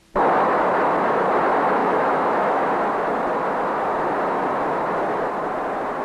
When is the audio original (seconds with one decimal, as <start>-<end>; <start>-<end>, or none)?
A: 0.0-1.8; 2.7-6.0